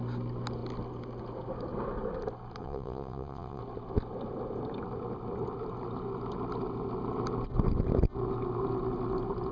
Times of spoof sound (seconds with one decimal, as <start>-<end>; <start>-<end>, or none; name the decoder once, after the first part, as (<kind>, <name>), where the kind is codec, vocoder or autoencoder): 2.6-3.6 (vocoder, WaveNeXt)